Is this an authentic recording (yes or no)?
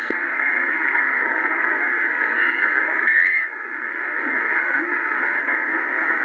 no